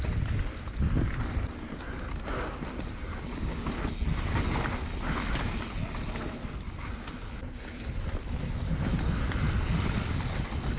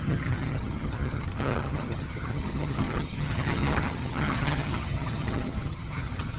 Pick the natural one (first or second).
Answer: first